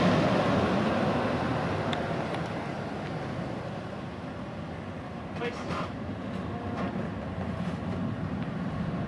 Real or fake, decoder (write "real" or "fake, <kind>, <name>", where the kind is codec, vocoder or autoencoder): real